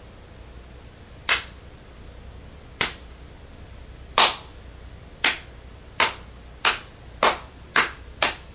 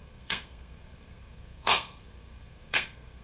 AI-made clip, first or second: second